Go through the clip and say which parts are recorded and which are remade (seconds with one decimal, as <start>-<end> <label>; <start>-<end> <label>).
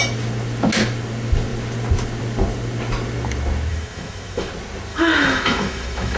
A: 0.0-3.7 recorded; 3.7-4.5 remade; 4.5-4.9 recorded; 4.9-6.2 remade